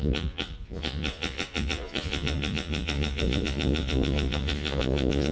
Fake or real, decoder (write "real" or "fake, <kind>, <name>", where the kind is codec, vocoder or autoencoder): fake, vocoder, Vocos